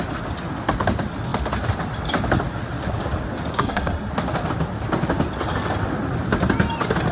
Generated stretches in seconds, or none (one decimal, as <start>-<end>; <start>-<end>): 3.5-4.1